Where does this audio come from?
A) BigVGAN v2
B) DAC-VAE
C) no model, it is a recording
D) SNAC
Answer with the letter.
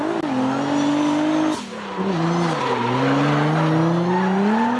C